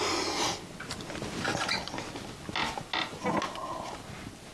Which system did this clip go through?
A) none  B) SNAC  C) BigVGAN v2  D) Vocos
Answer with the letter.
A